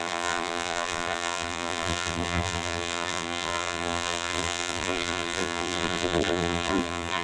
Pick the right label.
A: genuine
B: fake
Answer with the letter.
B